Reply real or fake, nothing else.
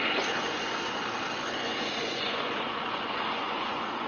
fake